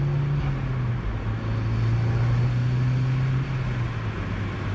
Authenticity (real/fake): real